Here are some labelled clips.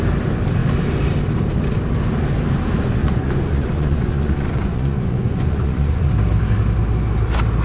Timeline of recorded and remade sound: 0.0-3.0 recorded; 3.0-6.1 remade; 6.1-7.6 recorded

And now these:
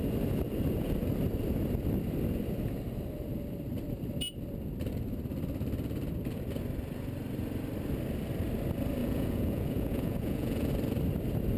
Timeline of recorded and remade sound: 0.0-9.0 recorded; 9.0-10.7 remade; 10.7-11.6 recorded

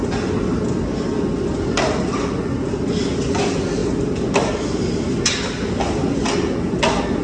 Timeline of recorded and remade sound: 0.0-7.2 recorded

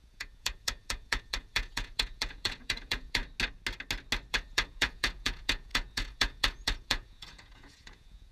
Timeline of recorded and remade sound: 0.0-3.2 remade; 3.2-4.3 recorded; 4.3-8.3 remade